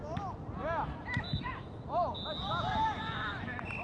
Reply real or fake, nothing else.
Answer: real